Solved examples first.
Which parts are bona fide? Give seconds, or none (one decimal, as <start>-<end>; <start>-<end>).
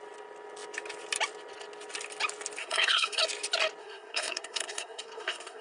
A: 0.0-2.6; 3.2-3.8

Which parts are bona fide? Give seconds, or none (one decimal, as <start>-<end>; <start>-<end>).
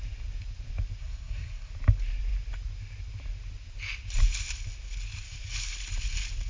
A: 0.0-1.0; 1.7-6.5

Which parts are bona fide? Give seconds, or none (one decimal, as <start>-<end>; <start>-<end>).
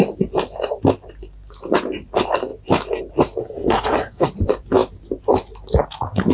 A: 0.0-3.4; 4.3-6.3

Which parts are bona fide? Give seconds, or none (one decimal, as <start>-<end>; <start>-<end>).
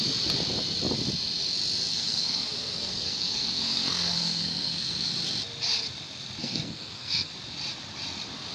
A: 0.0-1.9; 5.1-6.4; 7.3-8.5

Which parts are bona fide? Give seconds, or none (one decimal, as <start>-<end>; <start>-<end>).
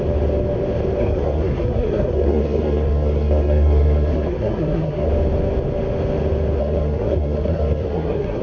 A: 0.0-1.0; 5.1-6.6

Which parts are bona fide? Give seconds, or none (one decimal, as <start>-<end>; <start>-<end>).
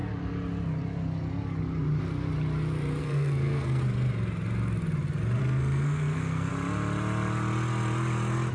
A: 0.0-3.0; 3.8-5.4; 6.5-8.5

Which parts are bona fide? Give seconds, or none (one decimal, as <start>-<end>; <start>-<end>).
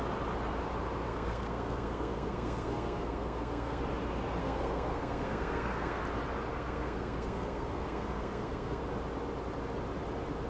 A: 0.0-1.1; 3.8-4.4; 6.0-6.5; 8.8-10.5